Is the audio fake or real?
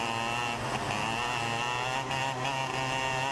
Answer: real